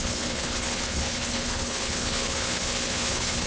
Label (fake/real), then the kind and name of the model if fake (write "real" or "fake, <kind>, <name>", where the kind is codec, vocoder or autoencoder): fake, codec, HILCodec